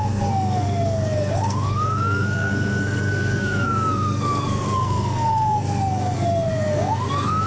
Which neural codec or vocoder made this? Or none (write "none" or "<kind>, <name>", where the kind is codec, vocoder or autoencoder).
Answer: codec, SNAC